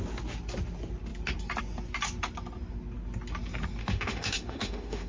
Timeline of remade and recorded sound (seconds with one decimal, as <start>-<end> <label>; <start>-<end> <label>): 0.0-3.8 recorded; 3.8-5.1 remade